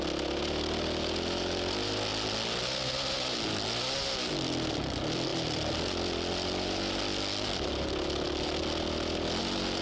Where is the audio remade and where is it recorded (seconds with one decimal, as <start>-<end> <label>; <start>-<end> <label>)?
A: 0.0-9.8 recorded